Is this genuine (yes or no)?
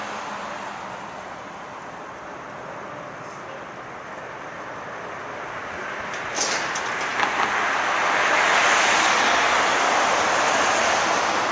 yes